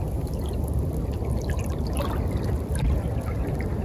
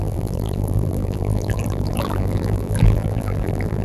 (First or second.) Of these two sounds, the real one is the first